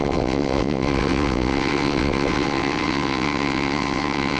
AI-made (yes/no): yes